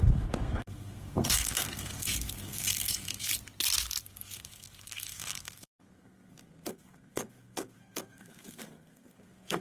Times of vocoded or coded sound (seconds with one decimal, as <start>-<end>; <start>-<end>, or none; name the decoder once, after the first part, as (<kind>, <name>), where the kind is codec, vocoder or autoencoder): 0.0-3.3 (codec, SNAC); 4.0-9.6